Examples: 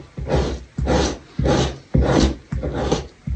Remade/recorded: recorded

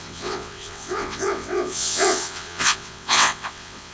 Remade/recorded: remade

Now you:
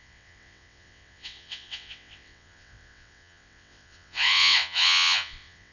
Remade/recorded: remade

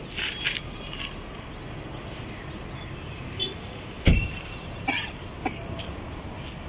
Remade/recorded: recorded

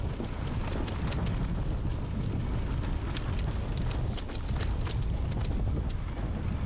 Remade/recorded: recorded